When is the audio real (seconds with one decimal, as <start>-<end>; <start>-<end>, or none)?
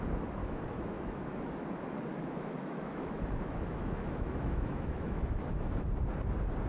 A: 0.0-0.4; 1.6-2.1; 5.9-6.7